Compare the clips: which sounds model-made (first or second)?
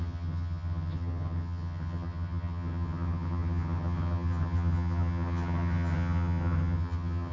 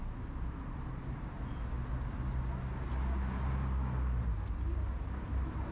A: first